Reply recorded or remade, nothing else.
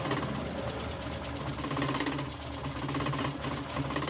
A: recorded